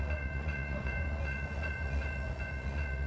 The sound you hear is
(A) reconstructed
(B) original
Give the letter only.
A